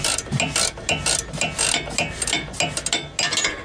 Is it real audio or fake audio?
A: real